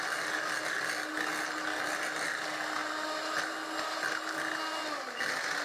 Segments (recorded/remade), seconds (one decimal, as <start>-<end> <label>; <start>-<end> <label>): 0.0-5.6 recorded